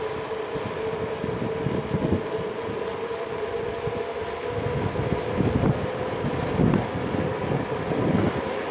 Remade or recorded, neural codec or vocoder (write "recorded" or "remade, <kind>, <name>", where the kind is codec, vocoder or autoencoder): recorded